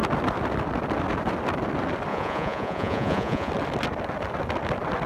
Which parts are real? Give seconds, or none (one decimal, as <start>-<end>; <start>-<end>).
0.0-2.1; 3.5-5.1